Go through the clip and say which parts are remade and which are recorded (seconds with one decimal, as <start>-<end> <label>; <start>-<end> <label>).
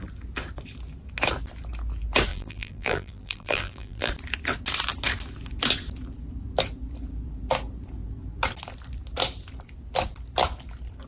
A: 0.0-2.3 recorded; 2.3-4.1 remade; 4.1-11.1 recorded